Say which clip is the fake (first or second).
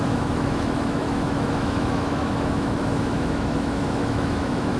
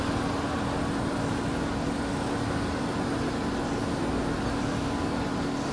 first